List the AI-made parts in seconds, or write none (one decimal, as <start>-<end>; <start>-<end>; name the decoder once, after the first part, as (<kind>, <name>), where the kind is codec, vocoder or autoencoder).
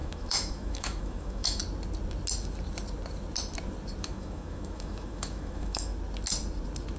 0.0-1.6 (autoencoder, DAC-VAE); 4.0-5.9